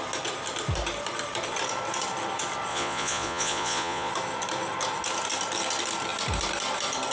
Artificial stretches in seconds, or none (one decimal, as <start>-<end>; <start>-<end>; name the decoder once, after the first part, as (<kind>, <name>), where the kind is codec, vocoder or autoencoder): 2.7-4.1 (vocoder, Vocos)